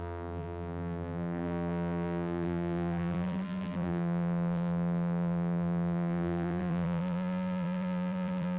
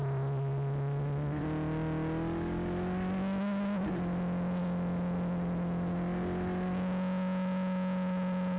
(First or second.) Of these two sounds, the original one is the second